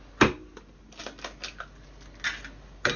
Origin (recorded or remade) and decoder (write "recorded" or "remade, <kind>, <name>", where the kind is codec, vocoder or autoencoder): recorded